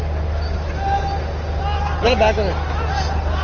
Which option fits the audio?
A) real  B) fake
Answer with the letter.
A